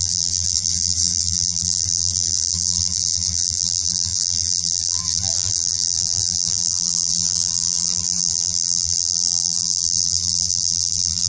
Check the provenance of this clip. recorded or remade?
remade